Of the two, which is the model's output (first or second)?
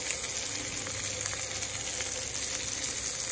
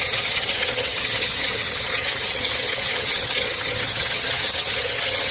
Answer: second